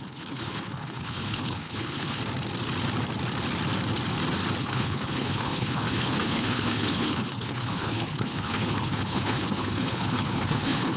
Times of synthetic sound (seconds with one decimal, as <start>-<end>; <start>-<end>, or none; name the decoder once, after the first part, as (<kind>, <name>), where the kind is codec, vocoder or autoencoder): 0.0-2.2 (codec, HILCodec); 4.6-11.0